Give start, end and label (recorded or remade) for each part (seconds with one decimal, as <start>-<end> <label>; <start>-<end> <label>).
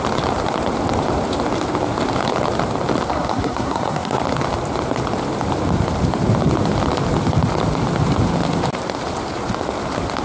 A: 0.0-3.1 recorded; 3.1-4.2 remade; 4.2-10.2 recorded